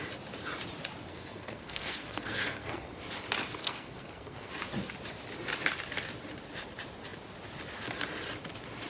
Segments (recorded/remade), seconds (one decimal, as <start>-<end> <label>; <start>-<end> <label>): 0.0-1.1 recorded; 1.1-3.0 remade; 3.0-3.6 recorded; 3.6-4.5 remade; 4.5-8.9 recorded